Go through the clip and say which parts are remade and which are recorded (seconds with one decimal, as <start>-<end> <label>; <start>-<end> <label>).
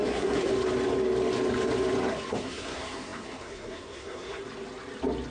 0.0-0.5 remade; 0.5-2.3 recorded; 2.3-4.4 remade; 4.4-5.3 recorded